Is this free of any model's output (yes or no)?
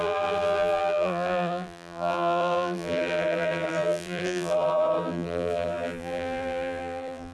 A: no